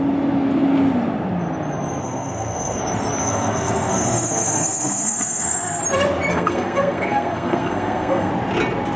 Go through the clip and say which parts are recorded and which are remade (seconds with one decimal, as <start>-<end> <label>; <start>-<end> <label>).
0.0-2.0 recorded; 2.0-2.8 remade; 2.8-3.2 recorded; 3.2-5.8 remade; 5.8-6.3 recorded; 6.3-8.3 remade; 8.3-9.0 recorded